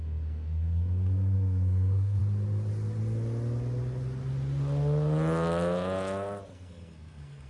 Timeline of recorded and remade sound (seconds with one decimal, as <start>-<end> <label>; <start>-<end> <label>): 0.0-2.2 remade; 2.2-6.5 recorded; 6.5-7.5 remade